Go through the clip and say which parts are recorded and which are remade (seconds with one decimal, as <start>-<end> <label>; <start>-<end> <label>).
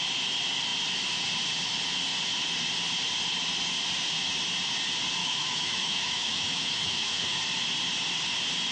0.0-5.2 recorded; 5.2-7.4 remade; 7.4-8.7 recorded